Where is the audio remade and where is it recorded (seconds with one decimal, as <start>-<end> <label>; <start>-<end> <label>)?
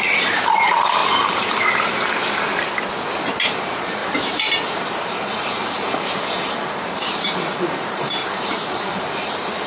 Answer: 0.0-2.5 remade; 2.5-3.5 recorded; 3.5-9.7 remade